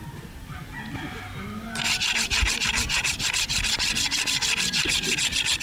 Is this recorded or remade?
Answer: recorded